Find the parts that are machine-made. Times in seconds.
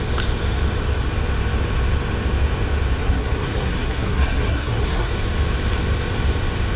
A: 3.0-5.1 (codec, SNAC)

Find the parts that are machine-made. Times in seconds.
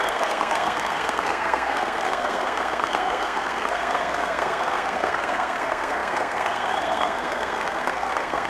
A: 0.0-8.5 (codec, SNAC)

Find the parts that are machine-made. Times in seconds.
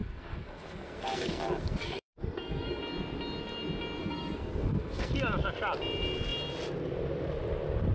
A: 0.0-2.8 (codec, SNAC); 4.0-5.1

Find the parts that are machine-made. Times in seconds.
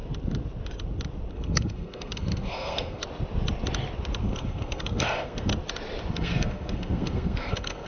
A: 1.3-3.0 (codec, SNAC); 4.2-5.5; 6.1-7.9